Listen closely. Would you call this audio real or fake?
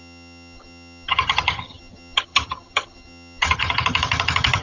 fake